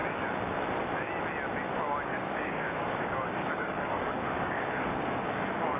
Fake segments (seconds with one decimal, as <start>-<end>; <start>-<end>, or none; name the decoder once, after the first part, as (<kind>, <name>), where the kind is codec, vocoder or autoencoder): 2.1-5.8 (codec, DAC)